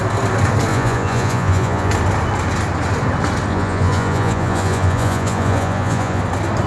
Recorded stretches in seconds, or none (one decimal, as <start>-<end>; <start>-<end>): 0.0-0.7; 1.9-3.5; 6.2-6.7